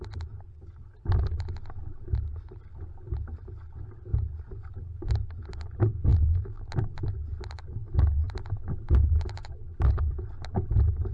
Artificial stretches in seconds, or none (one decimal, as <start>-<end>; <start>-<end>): 6.1-6.7